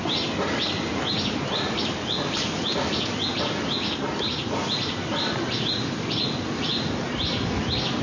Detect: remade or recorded remade